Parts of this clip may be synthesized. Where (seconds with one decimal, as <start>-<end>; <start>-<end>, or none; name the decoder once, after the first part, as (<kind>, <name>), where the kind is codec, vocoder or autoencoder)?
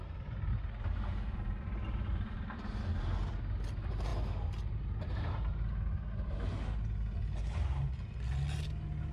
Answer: 0.0-2.7 (vocoder, BigVGAN v2)